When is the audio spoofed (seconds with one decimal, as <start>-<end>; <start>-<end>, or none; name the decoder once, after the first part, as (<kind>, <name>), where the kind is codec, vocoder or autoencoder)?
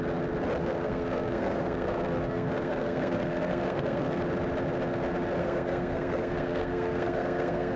0.6-4.2 (codec, SNAC); 5.4-7.8